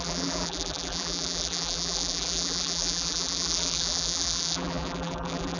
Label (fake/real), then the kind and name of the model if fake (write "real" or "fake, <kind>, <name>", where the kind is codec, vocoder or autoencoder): fake, vocoder, BigVGAN v2